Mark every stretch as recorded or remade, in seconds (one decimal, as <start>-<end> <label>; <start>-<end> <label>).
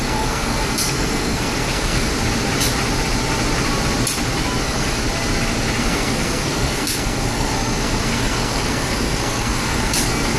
0.0-2.1 remade; 2.1-4.6 recorded; 4.6-5.0 remade; 5.0-5.8 recorded; 5.8-10.4 remade